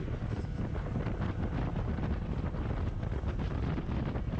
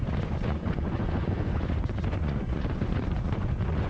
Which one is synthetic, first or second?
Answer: second